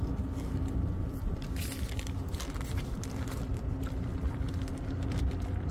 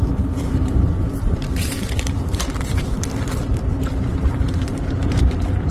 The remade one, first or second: second